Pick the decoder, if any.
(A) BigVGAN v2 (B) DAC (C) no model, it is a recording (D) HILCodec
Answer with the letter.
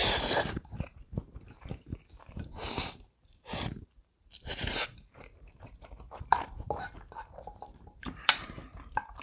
A